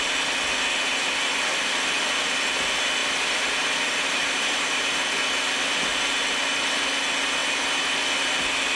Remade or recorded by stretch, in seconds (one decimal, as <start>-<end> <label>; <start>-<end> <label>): 0.0-3.0 recorded; 3.0-4.8 remade; 4.8-8.8 recorded